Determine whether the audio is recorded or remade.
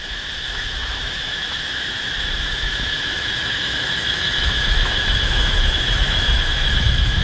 remade